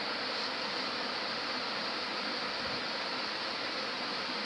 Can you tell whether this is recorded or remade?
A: recorded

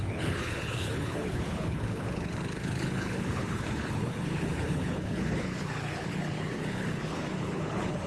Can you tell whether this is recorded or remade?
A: remade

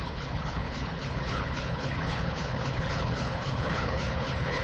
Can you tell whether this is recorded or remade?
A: remade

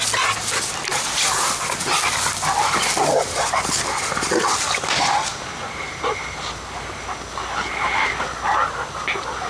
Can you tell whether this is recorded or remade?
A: recorded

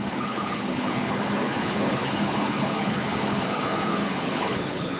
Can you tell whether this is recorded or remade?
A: remade